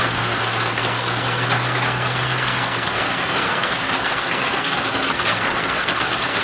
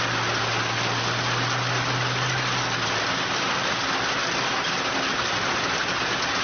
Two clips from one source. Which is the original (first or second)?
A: second